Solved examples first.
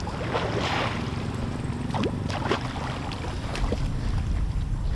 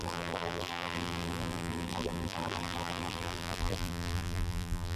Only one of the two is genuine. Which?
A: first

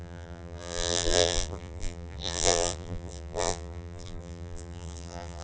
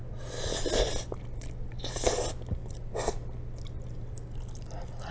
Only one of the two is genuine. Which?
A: second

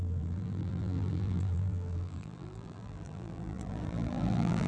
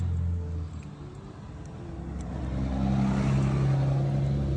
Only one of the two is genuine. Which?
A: second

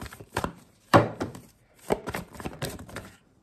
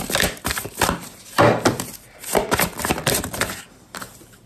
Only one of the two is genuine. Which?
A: second